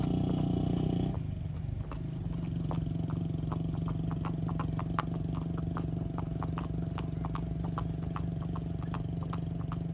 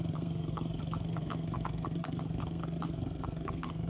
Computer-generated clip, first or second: second